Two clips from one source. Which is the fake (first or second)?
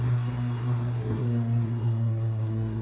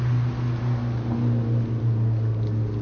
first